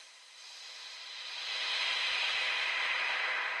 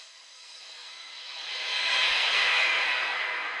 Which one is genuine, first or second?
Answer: first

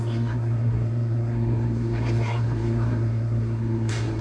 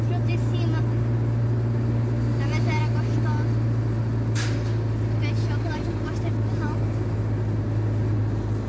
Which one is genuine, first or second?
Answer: second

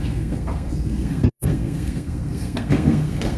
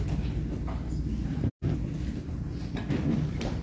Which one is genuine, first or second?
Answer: second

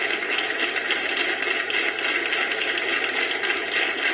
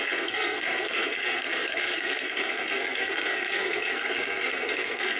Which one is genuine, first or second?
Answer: first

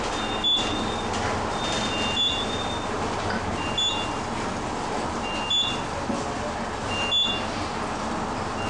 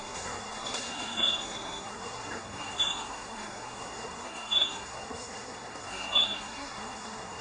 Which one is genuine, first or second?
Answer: first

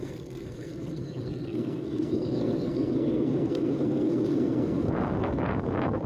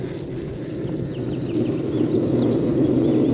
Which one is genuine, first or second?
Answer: second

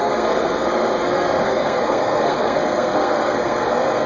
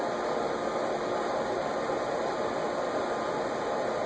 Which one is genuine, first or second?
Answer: second